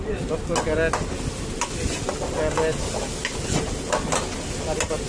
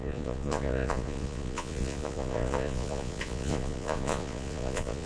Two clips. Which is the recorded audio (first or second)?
first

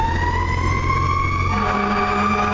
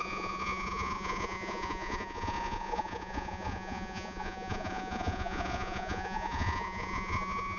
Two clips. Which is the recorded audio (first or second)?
first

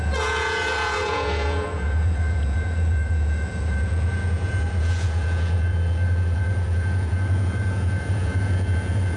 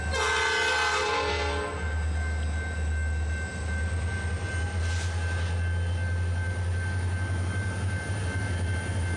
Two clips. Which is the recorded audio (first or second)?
second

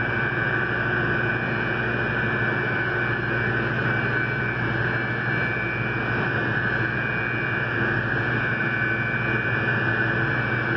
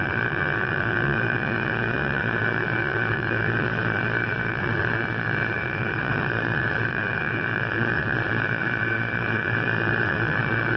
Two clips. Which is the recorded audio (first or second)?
first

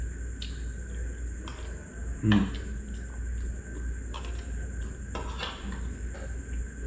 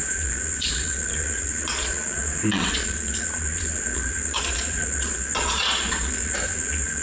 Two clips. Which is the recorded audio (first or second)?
first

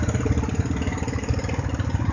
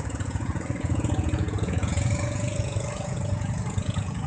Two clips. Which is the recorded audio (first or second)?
first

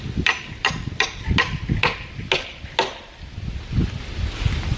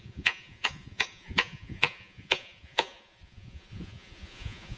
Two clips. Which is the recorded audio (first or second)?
first